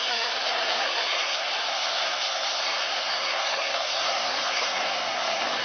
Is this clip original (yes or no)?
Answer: no